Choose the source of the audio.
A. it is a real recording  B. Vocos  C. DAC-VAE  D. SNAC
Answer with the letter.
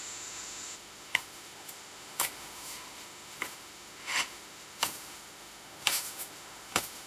C